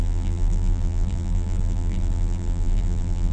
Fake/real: fake